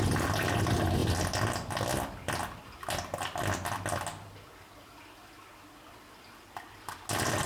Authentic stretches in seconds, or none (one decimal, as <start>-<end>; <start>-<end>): 0.0-7.5